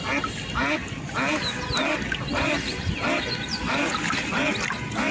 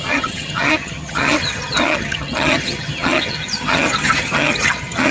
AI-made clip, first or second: second